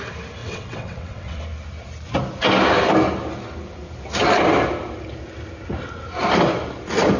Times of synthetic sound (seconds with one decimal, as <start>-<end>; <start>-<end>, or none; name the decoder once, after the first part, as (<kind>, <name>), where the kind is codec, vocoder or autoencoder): 0.4-1.4 (vocoder, WaveNeXt)